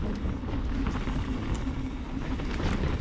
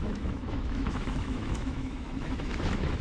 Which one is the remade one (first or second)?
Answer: second